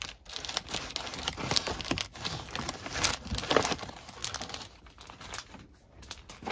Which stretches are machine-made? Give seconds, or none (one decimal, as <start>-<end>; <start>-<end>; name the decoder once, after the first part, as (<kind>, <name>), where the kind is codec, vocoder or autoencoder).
none